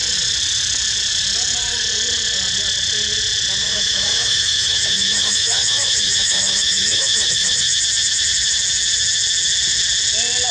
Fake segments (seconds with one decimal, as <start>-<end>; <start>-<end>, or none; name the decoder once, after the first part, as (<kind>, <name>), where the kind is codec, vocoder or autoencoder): 3.6-7.8 (autoencoder, DAC-VAE)